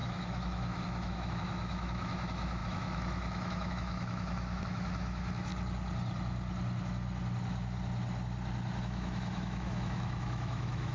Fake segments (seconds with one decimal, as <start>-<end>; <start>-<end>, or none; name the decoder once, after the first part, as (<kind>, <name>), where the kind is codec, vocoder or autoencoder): 0.0-5.5 (autoencoder, DAC-VAE); 8.8-10.9